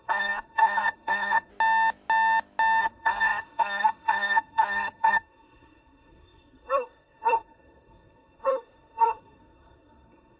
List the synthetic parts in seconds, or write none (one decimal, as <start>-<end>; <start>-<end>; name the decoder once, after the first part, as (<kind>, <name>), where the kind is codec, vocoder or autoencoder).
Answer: 0.0-1.5 (codec, SNAC); 2.8-10.4